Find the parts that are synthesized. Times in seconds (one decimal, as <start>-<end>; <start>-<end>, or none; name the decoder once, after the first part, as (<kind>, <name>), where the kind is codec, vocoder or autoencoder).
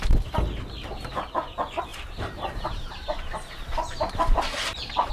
1.9-5.1 (vocoder, BigVGAN v2)